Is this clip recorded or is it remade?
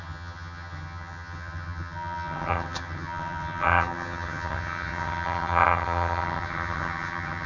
remade